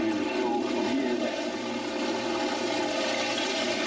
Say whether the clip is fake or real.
real